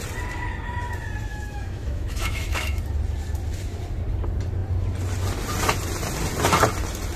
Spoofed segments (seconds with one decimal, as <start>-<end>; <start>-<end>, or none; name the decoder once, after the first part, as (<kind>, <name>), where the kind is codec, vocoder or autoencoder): 1.3-2.8 (autoencoder, DAC-VAE)